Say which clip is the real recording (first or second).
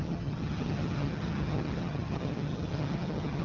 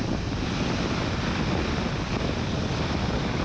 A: second